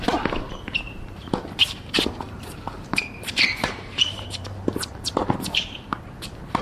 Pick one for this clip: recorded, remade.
remade